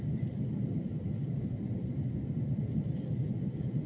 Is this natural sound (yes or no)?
yes